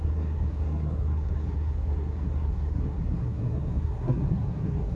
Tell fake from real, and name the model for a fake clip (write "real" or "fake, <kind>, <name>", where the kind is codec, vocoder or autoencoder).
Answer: fake, codec, SNAC